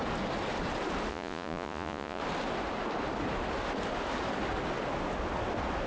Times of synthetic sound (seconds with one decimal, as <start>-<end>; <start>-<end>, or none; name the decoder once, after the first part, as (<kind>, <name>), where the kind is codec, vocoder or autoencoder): 1.1-2.2 (vocoder, Vocos)